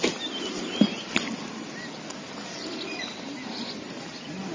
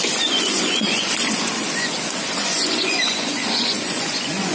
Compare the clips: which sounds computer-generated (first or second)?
second